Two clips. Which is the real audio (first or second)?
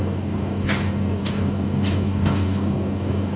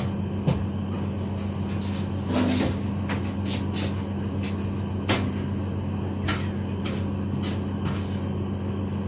second